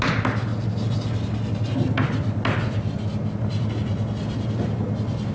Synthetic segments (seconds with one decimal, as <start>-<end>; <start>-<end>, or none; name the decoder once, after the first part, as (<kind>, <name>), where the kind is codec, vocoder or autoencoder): none

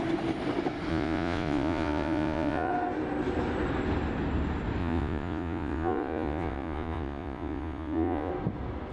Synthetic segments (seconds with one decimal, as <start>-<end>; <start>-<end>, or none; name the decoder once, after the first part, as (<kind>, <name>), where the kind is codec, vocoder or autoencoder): 0.9-2.7 (vocoder, Vocos); 4.8-8.3

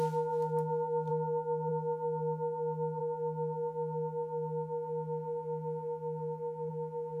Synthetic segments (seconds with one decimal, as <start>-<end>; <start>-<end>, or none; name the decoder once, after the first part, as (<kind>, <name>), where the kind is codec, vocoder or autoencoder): none

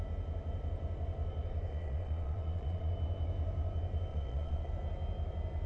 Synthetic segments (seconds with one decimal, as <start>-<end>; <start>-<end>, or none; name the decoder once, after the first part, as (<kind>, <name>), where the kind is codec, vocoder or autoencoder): 1.7-2.9 (vocoder, Vocos); 4.1-4.7